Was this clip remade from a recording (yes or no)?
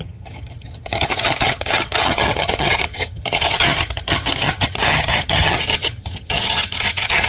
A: yes